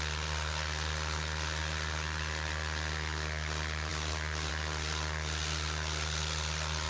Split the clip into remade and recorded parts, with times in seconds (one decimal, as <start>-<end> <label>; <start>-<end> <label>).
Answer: 0.0-6.9 recorded